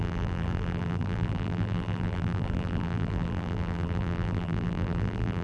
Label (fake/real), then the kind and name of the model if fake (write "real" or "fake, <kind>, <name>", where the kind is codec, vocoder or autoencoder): fake, vocoder, BigVGAN v2